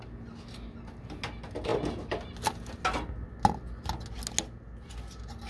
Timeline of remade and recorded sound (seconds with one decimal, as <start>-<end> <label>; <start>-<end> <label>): 0.0-5.5 recorded